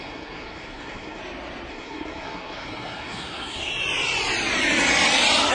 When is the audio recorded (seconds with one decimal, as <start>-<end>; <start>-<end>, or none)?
1.2-1.7; 3.7-5.5

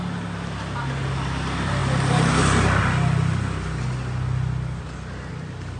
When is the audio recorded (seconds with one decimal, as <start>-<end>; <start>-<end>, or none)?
0.0-5.8

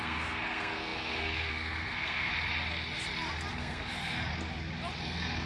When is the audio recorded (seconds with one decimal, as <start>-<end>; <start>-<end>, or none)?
2.3-3.5; 4.3-5.0

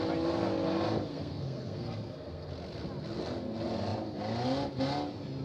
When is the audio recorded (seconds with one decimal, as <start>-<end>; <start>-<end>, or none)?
0.0-1.1; 2.5-5.4

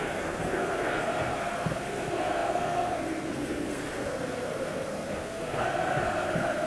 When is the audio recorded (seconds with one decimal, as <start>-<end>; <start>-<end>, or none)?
none

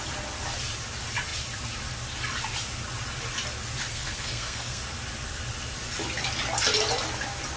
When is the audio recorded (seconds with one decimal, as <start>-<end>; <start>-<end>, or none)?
0.0-3.9; 4.8-7.6